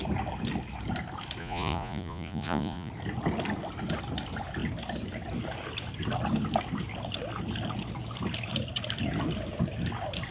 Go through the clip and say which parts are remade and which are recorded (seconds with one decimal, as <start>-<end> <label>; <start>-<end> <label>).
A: 0.0-1.4 recorded; 1.4-2.9 remade; 2.9-10.3 recorded